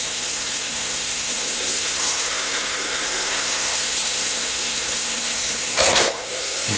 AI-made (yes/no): yes